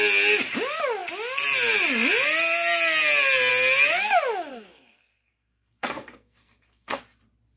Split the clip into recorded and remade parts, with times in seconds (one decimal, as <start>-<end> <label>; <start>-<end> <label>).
0.0-4.5 recorded; 4.5-7.0 remade; 7.0-7.6 recorded